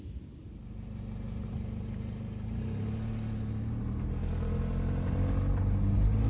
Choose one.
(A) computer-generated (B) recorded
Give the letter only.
B